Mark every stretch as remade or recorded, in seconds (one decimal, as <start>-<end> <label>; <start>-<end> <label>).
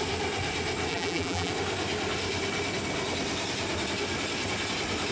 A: 0.0-0.9 recorded; 0.9-1.5 remade; 1.5-5.1 recorded